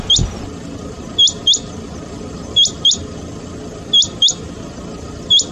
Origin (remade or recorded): recorded